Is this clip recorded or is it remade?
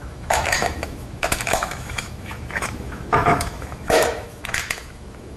remade